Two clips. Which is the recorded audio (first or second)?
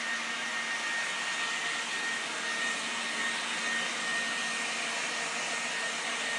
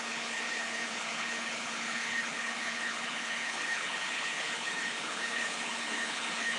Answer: first